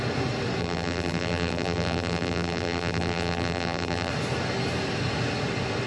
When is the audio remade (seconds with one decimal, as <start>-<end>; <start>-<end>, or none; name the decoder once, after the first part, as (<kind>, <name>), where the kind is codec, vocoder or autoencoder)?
0.6-4.1 (vocoder, BigVGAN v2)